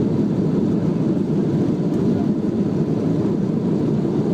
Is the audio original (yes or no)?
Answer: yes